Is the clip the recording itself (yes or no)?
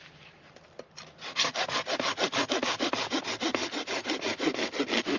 yes